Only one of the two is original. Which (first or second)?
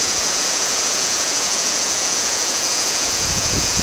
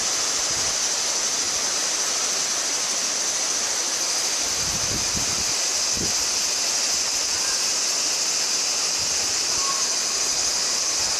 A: second